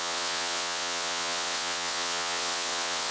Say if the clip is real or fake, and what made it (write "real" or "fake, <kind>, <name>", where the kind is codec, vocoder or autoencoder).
fake, vocoder, WaveNeXt